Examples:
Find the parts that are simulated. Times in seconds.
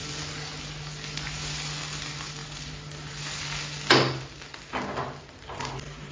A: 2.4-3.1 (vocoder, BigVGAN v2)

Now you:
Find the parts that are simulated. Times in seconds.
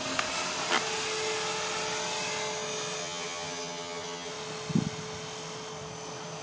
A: 3.0-4.3 (vocoder, HiFi-GAN)